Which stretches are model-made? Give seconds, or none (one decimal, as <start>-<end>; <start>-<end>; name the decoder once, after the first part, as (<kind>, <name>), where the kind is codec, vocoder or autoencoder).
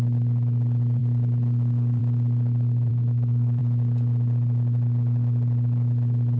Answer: 2.9-3.6 (codec, DAC)